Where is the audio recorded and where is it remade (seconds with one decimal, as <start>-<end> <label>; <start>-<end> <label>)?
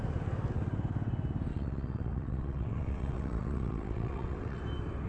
0.0-1.5 recorded; 1.5-4.6 remade; 4.6-5.1 recorded